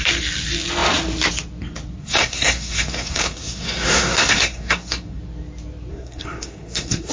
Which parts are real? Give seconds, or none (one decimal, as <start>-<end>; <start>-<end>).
0.0-2.0; 5.2-5.9